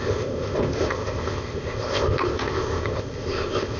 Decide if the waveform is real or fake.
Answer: fake